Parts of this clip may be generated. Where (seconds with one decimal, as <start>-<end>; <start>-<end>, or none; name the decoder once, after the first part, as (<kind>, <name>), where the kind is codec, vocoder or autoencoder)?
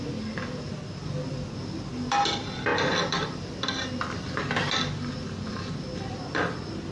none